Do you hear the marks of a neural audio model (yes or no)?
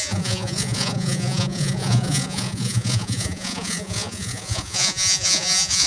yes